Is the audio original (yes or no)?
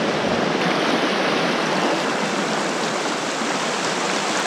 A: yes